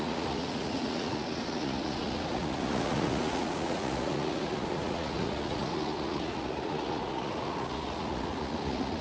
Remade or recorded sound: remade